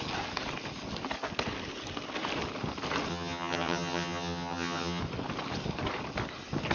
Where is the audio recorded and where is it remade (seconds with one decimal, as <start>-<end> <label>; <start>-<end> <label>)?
0.0-3.1 recorded; 3.1-5.0 remade; 5.0-6.7 recorded

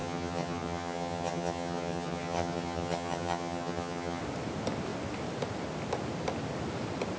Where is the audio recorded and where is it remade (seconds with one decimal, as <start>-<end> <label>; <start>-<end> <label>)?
0.0-4.2 remade; 4.2-7.2 recorded

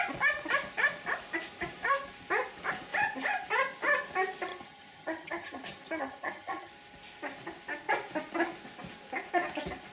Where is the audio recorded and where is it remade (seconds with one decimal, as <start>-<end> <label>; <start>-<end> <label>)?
0.0-4.5 recorded; 4.5-6.7 remade; 6.7-9.9 recorded

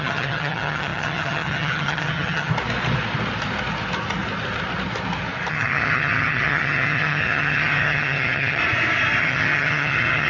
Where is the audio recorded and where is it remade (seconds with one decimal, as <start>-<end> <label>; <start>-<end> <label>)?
0.0-2.5 remade; 2.5-5.5 recorded; 5.5-8.6 remade; 8.6-9.2 recorded; 9.2-10.3 remade

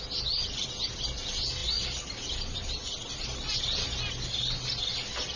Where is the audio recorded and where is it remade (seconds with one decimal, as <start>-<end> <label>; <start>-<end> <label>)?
0.0-5.4 recorded

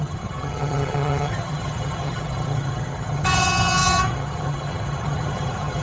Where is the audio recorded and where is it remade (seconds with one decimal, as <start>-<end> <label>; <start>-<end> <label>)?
0.0-5.8 remade